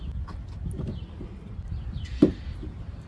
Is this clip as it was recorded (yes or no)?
yes